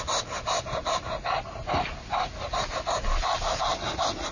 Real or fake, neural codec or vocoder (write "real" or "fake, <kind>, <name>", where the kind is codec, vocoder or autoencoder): real